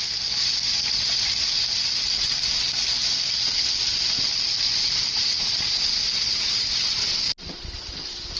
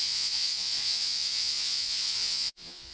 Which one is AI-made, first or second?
second